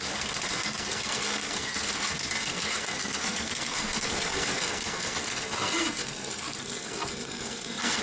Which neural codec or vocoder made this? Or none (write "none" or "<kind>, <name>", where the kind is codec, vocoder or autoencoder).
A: codec, SNAC